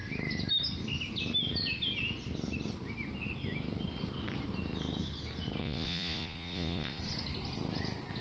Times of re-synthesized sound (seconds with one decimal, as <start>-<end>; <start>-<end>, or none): 5.6-7.0